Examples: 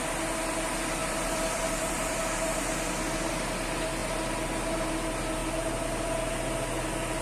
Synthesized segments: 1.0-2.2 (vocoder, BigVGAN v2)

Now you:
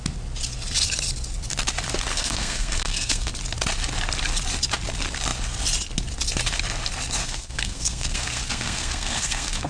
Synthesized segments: 2.1-3.3 (codec, SNAC); 7.2-9.7